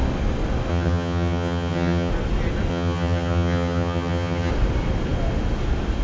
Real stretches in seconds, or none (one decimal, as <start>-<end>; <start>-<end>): 0.0-0.7; 2.1-2.7; 4.5-6.0